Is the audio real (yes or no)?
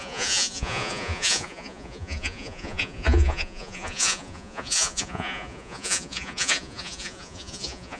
no